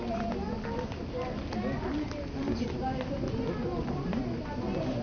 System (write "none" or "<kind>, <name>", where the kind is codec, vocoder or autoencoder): none